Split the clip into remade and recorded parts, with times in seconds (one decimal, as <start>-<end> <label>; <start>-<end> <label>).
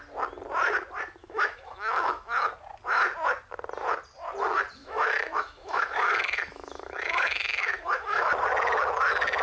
0.0-1.2 recorded; 1.2-2.5 remade; 2.5-4.8 recorded; 4.8-8.3 remade; 8.3-9.4 recorded